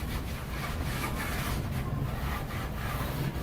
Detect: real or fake real